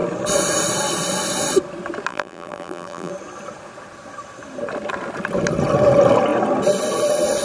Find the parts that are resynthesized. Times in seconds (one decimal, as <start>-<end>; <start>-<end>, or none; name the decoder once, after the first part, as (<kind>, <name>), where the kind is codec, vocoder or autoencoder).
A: 2.1-3.1 (vocoder, BigVGAN v2)